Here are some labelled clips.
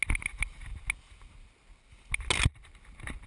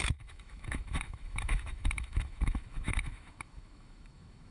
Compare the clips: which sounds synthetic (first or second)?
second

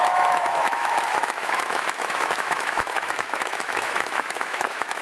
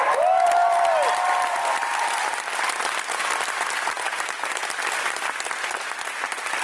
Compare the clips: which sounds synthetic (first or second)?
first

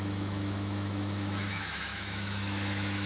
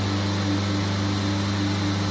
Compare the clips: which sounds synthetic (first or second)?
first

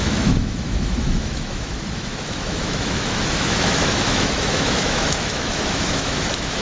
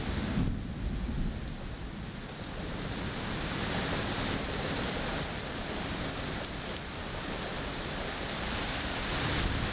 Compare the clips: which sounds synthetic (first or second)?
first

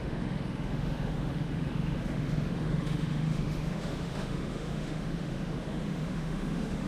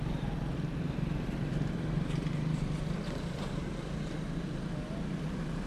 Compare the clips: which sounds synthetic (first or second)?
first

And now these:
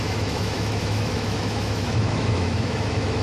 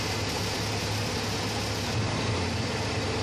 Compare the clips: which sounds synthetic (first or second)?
first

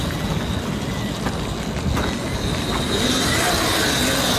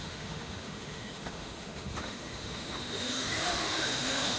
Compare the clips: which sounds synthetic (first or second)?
second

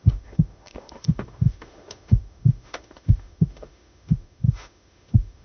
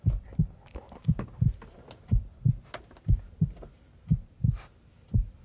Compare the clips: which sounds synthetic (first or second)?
first